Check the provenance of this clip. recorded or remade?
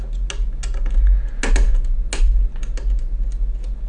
recorded